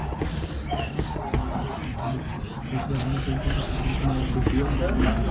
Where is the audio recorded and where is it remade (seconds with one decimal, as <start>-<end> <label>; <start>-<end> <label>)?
0.0-1.7 remade; 1.7-2.3 recorded; 2.3-3.9 remade; 3.9-5.3 recorded